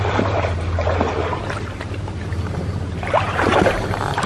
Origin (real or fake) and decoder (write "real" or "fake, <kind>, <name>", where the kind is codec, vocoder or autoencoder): fake, vocoder, BigVGAN v2